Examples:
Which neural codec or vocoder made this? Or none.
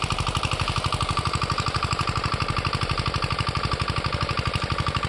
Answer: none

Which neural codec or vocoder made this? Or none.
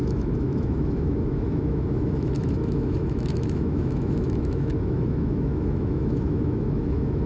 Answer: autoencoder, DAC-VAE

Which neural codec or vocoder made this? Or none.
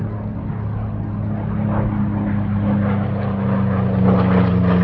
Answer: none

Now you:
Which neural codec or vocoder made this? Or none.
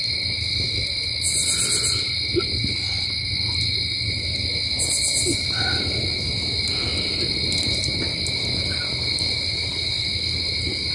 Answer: none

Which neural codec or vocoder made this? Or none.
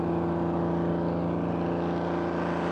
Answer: none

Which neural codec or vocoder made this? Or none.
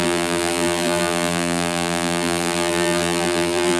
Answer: vocoder, BigVGAN v2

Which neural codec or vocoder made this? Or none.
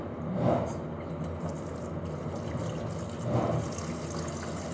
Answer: none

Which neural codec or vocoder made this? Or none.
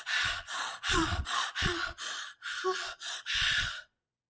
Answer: vocoder, Vocos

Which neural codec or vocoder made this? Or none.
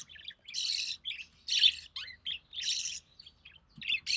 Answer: none